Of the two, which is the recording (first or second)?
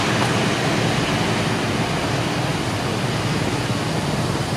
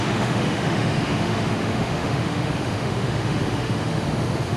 first